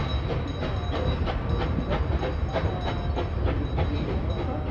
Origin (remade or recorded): recorded